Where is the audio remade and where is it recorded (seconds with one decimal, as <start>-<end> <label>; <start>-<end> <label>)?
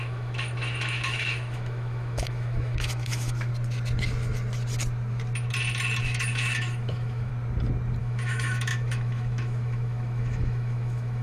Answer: 0.0-3.5 remade; 3.5-6.0 recorded; 6.0-7.3 remade; 7.3-8.0 recorded; 8.0-11.2 remade